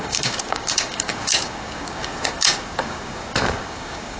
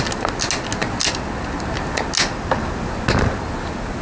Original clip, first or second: second